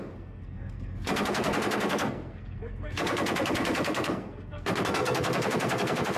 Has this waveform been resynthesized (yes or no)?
yes